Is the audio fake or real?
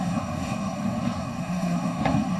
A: fake